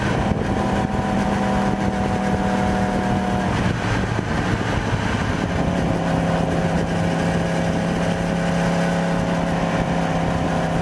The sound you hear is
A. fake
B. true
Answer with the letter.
B